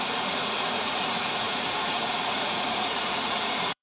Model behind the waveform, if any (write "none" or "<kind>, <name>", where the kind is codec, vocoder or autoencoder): vocoder, Vocos